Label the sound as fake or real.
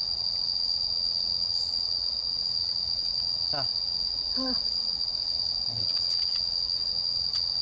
fake